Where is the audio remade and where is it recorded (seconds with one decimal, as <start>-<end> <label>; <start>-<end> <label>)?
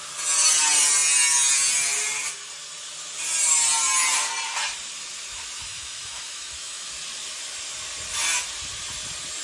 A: 0.0-5.6 recorded; 5.6-6.9 remade; 6.9-9.4 recorded